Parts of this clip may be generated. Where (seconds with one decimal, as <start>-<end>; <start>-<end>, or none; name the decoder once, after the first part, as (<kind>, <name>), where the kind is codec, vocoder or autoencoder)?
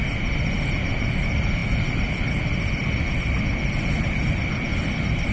none